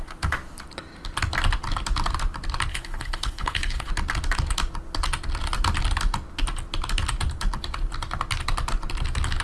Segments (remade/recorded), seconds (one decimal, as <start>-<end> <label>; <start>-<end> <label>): 0.0-2.7 recorded; 2.7-3.9 remade; 3.9-9.4 recorded

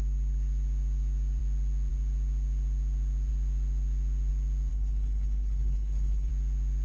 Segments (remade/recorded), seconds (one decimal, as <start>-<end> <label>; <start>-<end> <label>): 0.0-4.7 recorded; 4.7-6.3 remade; 6.3-6.8 recorded

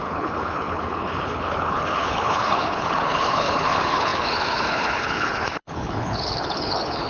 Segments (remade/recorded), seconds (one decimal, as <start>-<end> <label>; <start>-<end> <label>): 0.0-7.1 remade